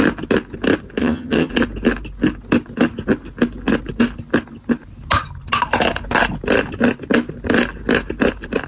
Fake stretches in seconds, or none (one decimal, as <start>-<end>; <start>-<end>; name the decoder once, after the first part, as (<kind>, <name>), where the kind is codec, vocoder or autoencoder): 1.0-1.5 (vocoder, HiFi-GAN)